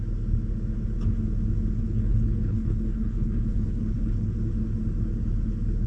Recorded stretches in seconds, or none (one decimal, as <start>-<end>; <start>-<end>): 0.0-1.8; 4.3-5.9